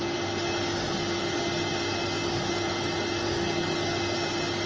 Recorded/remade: recorded